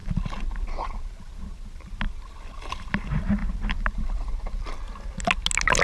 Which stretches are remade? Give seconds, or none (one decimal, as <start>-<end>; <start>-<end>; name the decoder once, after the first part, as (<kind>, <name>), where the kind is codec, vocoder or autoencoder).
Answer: none